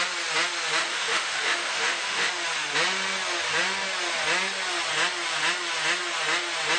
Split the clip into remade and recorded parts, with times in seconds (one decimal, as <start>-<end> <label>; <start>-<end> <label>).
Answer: 0.0-0.8 recorded; 0.8-2.3 remade; 2.3-6.8 recorded